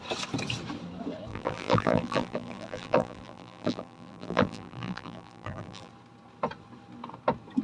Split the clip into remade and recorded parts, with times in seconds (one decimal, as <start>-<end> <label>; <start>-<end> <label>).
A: 0.0-1.3 recorded; 1.3-5.9 remade; 5.9-7.6 recorded